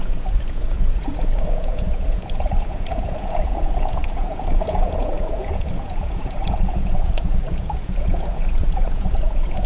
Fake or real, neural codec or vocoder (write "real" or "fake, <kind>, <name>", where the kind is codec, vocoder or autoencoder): fake, vocoder, Vocos